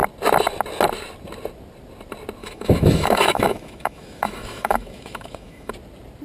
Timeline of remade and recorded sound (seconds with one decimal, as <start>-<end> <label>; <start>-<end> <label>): 0.0-2.4 recorded; 2.4-5.7 remade; 5.7-6.2 recorded

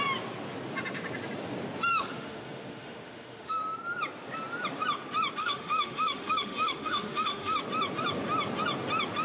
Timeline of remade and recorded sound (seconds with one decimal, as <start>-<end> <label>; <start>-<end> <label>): 0.0-1.9 recorded; 1.9-3.6 remade; 3.6-5.4 recorded; 5.4-7.6 remade; 7.6-9.2 recorded

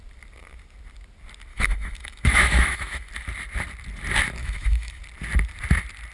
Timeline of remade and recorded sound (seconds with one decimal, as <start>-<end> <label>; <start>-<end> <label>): 0.0-1.5 recorded; 1.5-3.1 remade; 3.1-4.4 recorded; 4.4-5.0 remade; 5.0-6.1 recorded

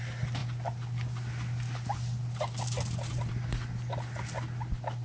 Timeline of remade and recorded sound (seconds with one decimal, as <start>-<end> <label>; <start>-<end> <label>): 0.0-5.0 recorded